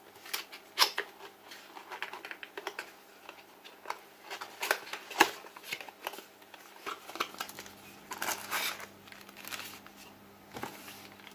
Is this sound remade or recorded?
recorded